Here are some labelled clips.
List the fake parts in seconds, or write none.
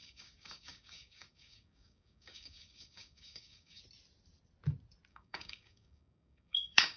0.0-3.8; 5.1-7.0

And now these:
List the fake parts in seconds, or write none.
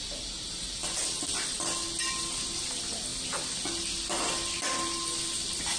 none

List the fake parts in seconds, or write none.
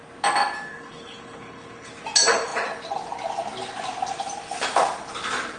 0.7-1.9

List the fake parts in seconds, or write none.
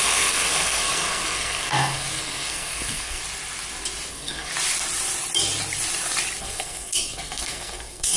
0.0-3.2; 4.1-4.5; 6.4-8.2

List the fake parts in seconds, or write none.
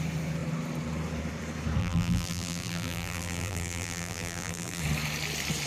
1.8-4.8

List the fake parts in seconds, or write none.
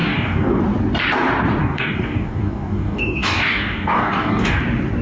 0.0-0.6; 1.6-4.6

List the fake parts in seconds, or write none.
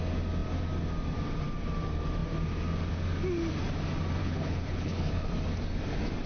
4.2-5.3